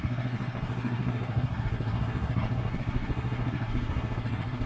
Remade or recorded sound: remade